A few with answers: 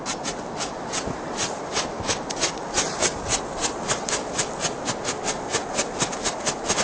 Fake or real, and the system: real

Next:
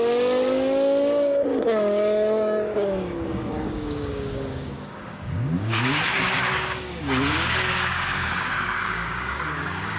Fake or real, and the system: fake, codec, DAC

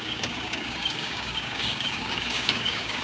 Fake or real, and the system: fake, codec, DAC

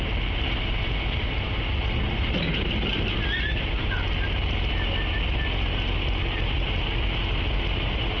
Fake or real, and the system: real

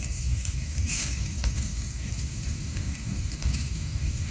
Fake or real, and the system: fake, codec, DAC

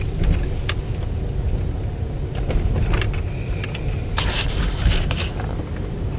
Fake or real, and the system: real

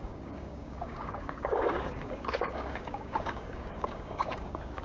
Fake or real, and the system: fake, codec, DAC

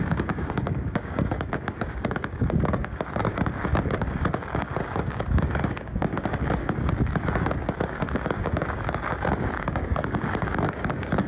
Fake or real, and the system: fake, codec, DAC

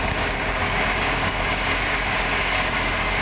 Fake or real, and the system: fake, codec, DAC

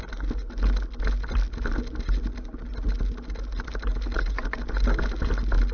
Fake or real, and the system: real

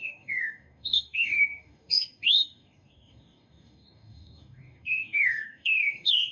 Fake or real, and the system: fake, codec, DAC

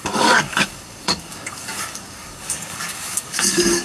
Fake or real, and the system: fake, codec, DAC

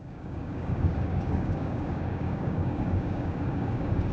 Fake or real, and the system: fake, codec, DAC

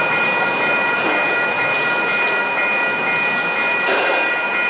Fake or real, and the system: real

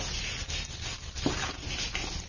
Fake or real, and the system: real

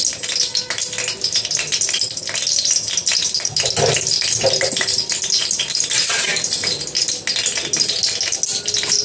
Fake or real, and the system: real